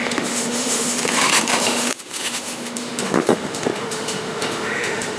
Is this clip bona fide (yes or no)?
no